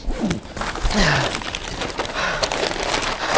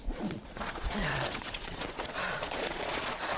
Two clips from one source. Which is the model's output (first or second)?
second